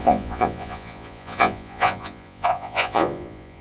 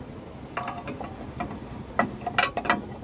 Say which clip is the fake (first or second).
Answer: first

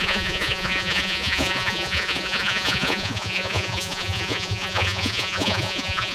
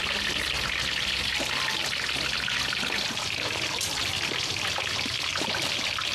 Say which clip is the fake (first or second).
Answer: first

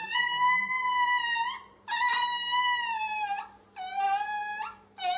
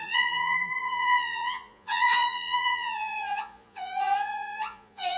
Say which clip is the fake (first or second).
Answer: second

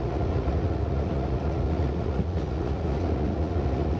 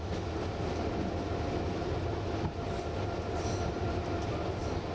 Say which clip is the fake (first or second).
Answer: first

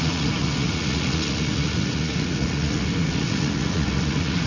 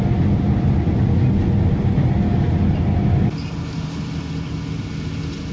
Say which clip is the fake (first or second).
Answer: first